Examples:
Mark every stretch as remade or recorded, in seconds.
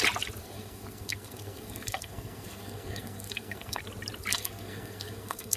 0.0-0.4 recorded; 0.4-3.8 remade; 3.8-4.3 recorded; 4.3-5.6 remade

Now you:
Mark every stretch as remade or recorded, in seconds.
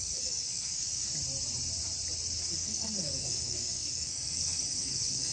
0.0-1.1 remade; 1.1-2.5 recorded; 2.5-5.3 remade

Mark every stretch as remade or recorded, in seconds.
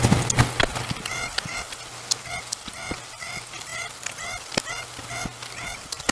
0.0-6.1 recorded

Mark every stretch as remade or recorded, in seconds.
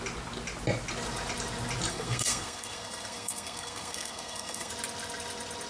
0.0-1.9 recorded; 1.9-4.7 remade; 4.7-5.7 recorded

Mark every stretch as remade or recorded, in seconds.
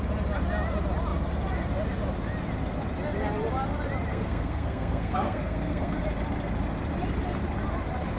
0.0-4.1 recorded; 4.1-6.0 remade; 6.0-8.2 recorded